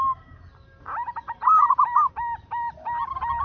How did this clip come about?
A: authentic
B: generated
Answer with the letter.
A